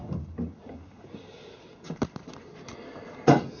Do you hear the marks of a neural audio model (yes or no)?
no